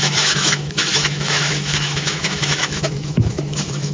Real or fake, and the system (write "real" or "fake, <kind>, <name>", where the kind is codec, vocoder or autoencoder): fake, autoencoder, DAC-VAE